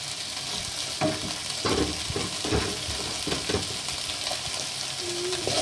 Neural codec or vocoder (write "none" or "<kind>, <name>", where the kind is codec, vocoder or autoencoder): none